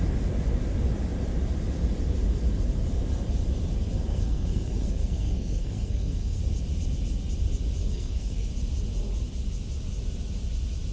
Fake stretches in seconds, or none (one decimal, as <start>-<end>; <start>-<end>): 4.1-6.4; 7.8-8.5